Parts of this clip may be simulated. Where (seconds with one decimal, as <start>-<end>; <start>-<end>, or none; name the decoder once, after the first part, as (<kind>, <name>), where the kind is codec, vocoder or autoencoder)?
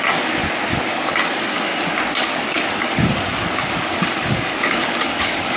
0.0-0.4 (codec, DAC); 0.9-1.7; 2.2-5.6